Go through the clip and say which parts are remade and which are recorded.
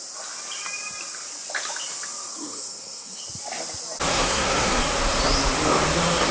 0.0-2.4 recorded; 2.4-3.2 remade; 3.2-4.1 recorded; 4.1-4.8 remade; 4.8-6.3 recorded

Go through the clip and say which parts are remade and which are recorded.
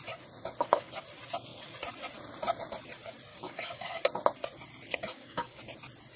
0.0-3.3 recorded; 3.3-4.0 remade; 4.0-5.1 recorded; 5.1-5.6 remade; 5.6-6.2 recorded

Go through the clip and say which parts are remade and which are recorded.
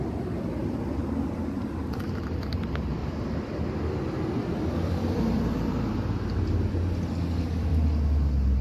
0.0-3.0 recorded; 3.0-3.6 remade; 3.6-4.4 recorded; 4.4-7.7 remade; 7.7-8.6 recorded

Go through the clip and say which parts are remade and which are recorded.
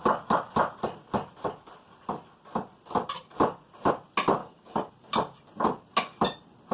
0.0-4.4 recorded; 4.4-4.9 remade; 4.9-6.7 recorded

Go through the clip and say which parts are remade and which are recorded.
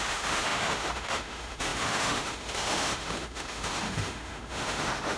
0.0-5.2 remade